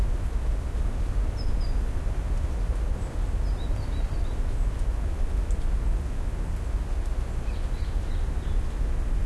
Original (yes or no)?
yes